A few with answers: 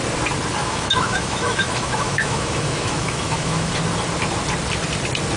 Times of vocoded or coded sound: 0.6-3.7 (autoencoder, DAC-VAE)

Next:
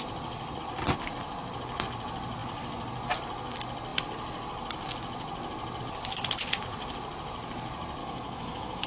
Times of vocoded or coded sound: 8.0-8.9 (autoencoder, DAC-VAE)

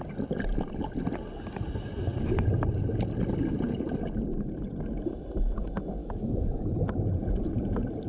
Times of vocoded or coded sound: 6.0-6.7 (autoencoder, DAC-VAE)

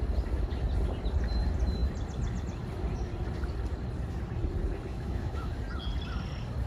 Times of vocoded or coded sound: 4.9-5.5 (autoencoder, DAC-VAE)

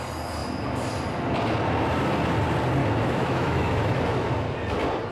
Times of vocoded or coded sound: 2.8-4.3 (autoencoder, DAC-VAE)

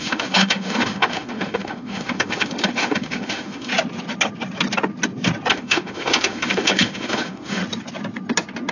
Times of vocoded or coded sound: 0.0-3.7 (autoencoder, DAC-VAE); 5.5-7.6

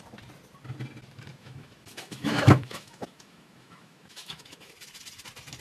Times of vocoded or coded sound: 1.3-4.7 (autoencoder, DAC-VAE)

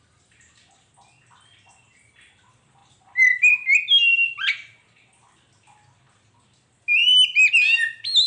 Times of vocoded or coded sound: none